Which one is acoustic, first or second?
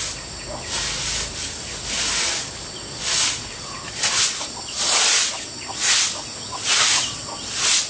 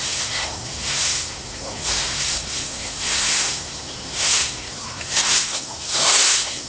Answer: first